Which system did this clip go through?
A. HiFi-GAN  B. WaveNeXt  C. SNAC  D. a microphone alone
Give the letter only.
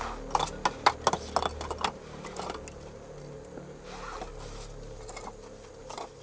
D